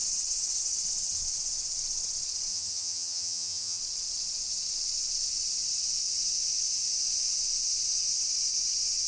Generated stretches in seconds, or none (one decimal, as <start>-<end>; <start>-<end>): 2.5-3.8